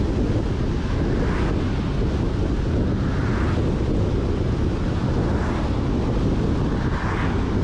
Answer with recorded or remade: recorded